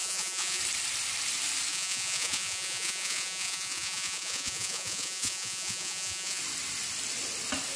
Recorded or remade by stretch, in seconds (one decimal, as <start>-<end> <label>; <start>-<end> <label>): 0.0-0.6 remade; 0.6-1.7 recorded; 1.7-6.4 remade; 6.4-7.8 recorded

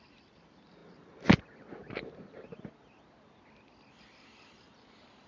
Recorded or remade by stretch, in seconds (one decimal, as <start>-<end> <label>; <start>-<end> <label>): 0.0-5.3 recorded